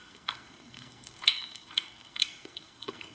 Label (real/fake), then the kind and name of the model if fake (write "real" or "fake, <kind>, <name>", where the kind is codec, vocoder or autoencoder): fake, codec, SNAC